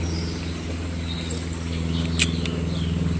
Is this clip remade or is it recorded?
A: recorded